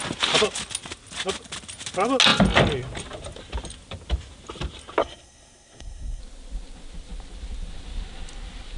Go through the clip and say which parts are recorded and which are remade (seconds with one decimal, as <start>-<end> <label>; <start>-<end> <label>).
0.0-5.0 recorded; 5.0-6.2 remade; 6.2-8.8 recorded